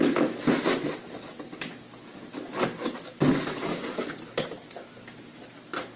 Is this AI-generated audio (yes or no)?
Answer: no